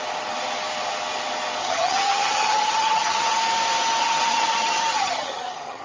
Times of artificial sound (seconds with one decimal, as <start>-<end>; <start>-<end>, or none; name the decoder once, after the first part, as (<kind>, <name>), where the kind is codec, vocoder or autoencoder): 1.6-3.4 (vocoder, HiFi-GAN); 4.0-5.8

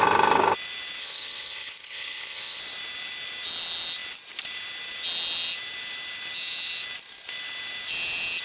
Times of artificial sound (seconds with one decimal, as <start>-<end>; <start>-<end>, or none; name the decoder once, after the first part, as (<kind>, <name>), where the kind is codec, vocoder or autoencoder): 1.0-2.6 (codec, HILCodec)

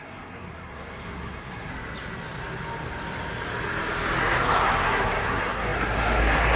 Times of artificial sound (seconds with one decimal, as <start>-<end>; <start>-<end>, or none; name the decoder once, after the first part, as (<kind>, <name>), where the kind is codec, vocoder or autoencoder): 0.0-1.7 (codec, SNAC); 4.2-6.6

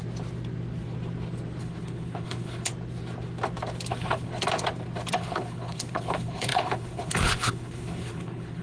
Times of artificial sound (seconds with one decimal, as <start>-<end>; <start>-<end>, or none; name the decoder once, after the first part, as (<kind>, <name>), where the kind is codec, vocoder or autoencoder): 1.6-2.7 (codec, HILCodec); 3.9-4.3; 5.1-8.6

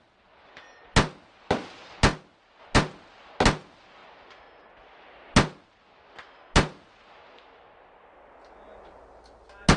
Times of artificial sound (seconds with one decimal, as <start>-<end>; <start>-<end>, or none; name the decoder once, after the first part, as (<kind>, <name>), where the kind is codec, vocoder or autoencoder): none